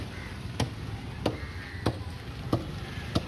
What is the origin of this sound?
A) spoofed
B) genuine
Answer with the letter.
B